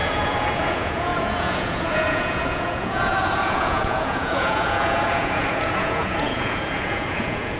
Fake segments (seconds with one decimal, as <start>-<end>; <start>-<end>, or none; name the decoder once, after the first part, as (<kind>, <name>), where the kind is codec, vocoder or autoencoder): 0.0-7.6 (vocoder, Vocos)